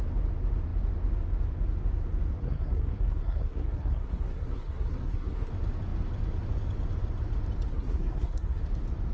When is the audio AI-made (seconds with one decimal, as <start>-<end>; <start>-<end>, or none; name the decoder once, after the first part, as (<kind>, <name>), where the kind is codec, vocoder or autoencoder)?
2.4-5.5 (codec, SNAC); 7.7-8.6